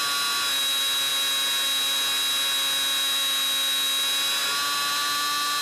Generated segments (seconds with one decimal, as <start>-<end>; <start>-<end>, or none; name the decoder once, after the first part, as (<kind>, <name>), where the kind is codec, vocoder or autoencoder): none